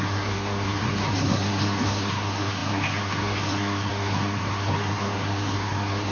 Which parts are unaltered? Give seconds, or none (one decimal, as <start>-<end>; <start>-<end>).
none